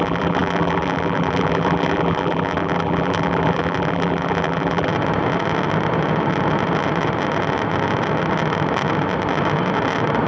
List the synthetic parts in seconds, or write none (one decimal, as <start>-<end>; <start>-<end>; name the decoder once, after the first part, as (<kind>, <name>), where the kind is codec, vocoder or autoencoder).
0.0-4.9 (vocoder, BigVGAN v2)